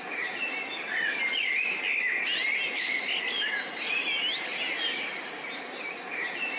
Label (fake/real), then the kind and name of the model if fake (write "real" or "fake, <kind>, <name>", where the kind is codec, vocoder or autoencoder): real